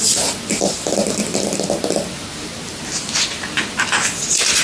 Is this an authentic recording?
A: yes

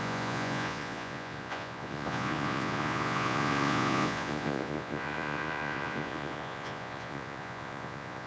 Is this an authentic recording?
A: no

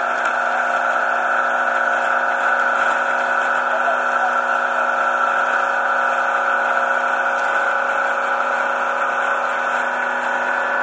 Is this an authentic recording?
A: yes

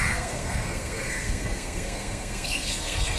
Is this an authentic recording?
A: no